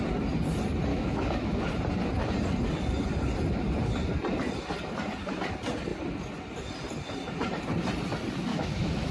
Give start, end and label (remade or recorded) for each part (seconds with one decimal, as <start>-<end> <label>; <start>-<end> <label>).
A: 0.0-0.9 recorded; 0.9-1.7 remade; 1.7-8.5 recorded; 8.5-9.1 remade